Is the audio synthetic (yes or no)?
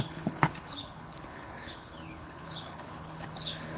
yes